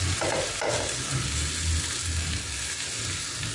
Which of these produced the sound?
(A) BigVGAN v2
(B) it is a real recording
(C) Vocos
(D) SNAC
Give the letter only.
B